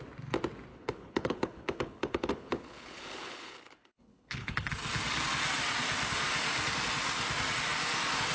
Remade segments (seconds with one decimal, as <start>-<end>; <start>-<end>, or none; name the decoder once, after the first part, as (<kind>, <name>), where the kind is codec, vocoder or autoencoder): 0.7-4.7 (codec, HILCodec)